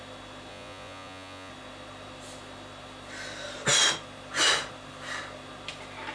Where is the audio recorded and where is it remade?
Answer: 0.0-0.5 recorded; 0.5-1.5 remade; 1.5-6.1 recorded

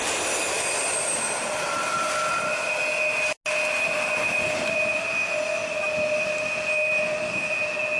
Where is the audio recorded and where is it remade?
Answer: 0.0-8.0 recorded

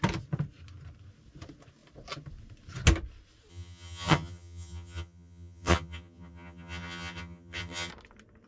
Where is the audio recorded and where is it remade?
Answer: 0.0-3.5 recorded; 3.5-7.9 remade; 7.9-8.5 recorded

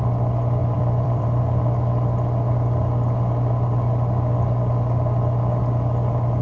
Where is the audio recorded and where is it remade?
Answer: 0.0-0.6 recorded; 0.6-1.4 remade; 1.4-6.4 recorded

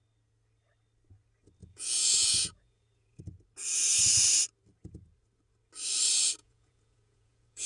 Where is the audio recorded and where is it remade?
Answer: 0.0-1.6 recorded; 1.6-3.2 remade; 3.2-6.4 recorded; 6.4-7.7 remade